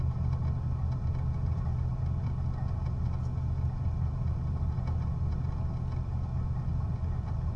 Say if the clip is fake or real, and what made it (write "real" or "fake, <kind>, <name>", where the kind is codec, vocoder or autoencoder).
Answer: real